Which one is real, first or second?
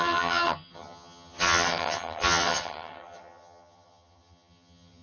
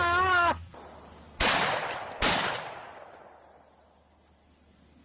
second